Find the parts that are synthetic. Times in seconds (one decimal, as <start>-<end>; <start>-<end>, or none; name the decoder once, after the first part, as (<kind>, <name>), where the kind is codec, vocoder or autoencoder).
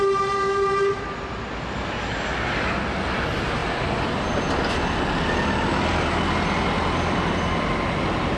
none